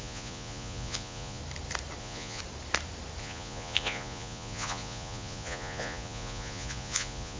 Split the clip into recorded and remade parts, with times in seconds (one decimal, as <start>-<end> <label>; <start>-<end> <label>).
0.0-1.4 remade; 1.4-2.0 recorded; 2.0-2.4 remade; 2.4-3.2 recorded; 3.2-7.4 remade